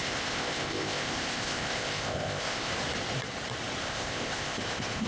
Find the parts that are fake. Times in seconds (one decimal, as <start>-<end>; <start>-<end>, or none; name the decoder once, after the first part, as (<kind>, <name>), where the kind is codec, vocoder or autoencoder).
0.0-2.7 (codec, ZipCodec); 3.8-5.1